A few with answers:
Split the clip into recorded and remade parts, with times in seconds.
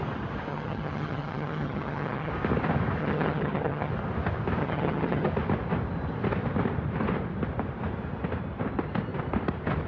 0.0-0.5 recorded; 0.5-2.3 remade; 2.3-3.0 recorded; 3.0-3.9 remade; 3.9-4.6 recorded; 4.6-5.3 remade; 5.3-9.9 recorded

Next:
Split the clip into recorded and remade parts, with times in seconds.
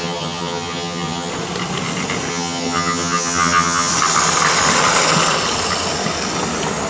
0.0-1.3 remade; 1.3-2.3 recorded; 2.3-3.9 remade; 3.9-6.9 recorded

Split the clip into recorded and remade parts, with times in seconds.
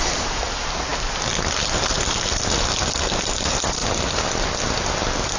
0.0-5.4 recorded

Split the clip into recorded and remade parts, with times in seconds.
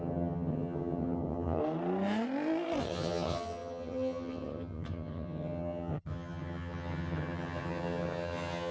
0.0-1.6 remade; 1.6-2.8 recorded; 2.8-8.7 remade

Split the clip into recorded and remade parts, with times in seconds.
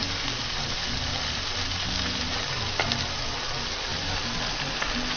0.0-5.2 recorded